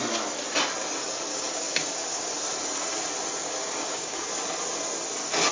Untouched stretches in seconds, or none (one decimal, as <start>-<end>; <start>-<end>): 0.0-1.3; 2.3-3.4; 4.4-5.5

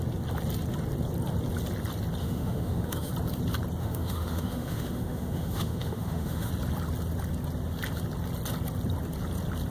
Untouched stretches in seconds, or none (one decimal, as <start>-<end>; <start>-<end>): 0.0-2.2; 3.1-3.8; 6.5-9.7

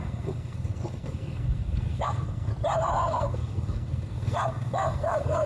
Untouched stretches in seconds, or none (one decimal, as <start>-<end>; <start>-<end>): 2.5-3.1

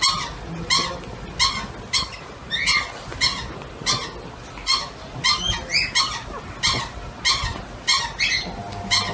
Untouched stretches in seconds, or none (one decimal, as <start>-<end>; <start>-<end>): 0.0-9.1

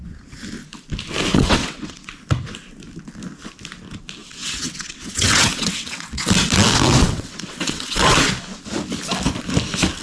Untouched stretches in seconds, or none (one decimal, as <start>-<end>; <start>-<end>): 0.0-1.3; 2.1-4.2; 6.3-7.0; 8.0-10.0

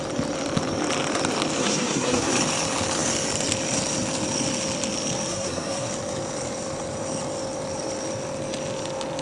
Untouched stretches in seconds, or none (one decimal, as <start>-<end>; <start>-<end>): 0.0-1.6; 2.3-5.3; 5.9-9.2